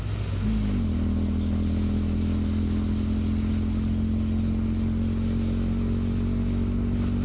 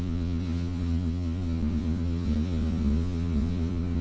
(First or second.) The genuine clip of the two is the first